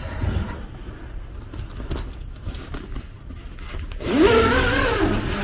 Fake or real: real